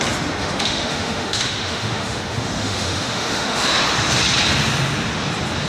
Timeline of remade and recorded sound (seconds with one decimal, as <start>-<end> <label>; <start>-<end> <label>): 0.0-0.4 recorded; 0.4-3.8 remade; 3.8-5.7 recorded